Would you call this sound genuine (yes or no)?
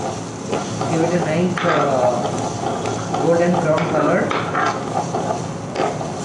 yes